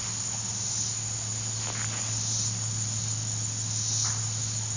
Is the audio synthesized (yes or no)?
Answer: no